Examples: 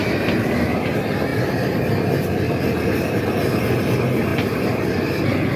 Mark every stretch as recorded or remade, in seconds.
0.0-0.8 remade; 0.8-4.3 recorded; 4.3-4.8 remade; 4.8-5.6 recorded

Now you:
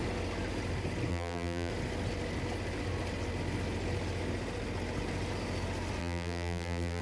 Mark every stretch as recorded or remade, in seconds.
0.0-1.1 recorded; 1.1-1.7 remade; 1.7-6.0 recorded; 6.0-7.0 remade

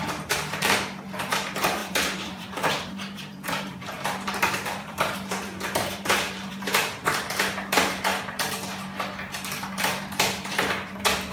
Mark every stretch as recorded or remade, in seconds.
0.0-8.1 remade; 8.1-9.8 recorded; 9.8-11.3 remade

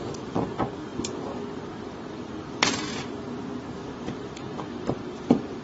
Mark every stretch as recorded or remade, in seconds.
0.0-0.9 recorded; 0.9-2.9 remade; 2.9-3.8 recorded; 3.8-5.6 remade

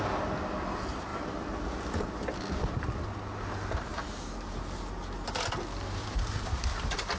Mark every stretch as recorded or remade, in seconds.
0.0-3.9 recorded; 3.9-5.5 remade; 5.5-6.0 recorded; 6.0-6.6 remade; 6.6-7.2 recorded

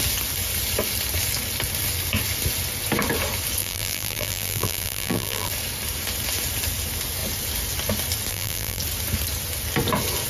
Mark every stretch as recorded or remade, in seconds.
0.0-3.6 recorded; 3.6-5.5 remade; 5.5-8.3 recorded; 8.3-8.8 remade; 8.8-10.3 recorded

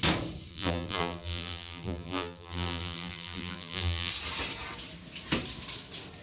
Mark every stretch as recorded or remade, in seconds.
0.0-0.5 recorded; 0.5-4.1 remade; 4.1-6.2 recorded

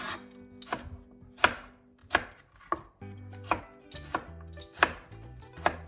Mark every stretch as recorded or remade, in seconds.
0.0-2.0 recorded; 2.0-3.6 remade; 3.6-5.9 recorded